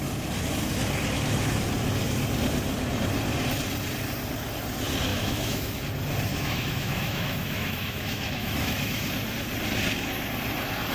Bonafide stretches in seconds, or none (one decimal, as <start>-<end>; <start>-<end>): 0.0-5.1; 5.8-6.3; 9.1-10.9